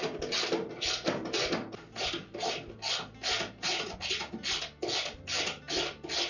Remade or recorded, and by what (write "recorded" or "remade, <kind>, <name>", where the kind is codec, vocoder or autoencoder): recorded